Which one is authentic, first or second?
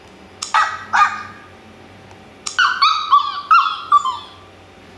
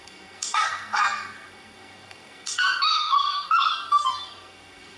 first